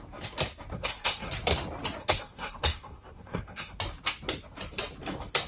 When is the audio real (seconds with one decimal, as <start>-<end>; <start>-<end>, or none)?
0.0-0.7; 1.3-2.0; 3.8-5.5